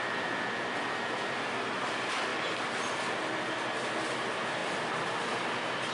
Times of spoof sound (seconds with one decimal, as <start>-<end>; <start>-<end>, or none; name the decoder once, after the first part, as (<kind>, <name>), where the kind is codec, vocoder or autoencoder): none